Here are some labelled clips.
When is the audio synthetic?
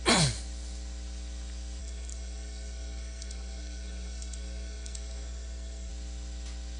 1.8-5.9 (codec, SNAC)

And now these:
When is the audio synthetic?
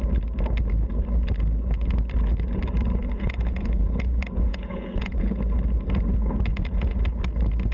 3.0-5.4 (vocoder, Vocos); 6.5-7.0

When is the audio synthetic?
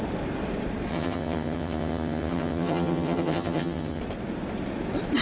0.9-4.0 (vocoder, HiFi-GAN)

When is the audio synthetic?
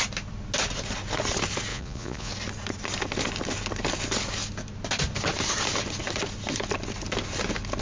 1.7-2.3 (vocoder, Vocos)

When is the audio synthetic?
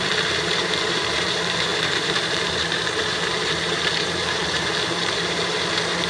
0.0-6.1 (vocoder, BigVGAN v2)